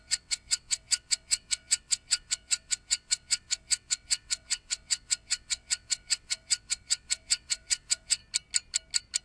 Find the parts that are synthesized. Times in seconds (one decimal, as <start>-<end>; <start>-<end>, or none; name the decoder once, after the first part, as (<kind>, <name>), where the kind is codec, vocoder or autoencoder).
0.0-8.2 (vocoder, WaveNeXt)